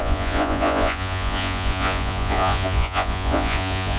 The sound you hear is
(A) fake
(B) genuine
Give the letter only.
A